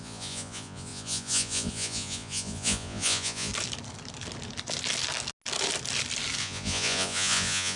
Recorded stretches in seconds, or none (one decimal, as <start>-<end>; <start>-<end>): 3.5-6.4